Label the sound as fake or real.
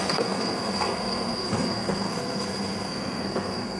fake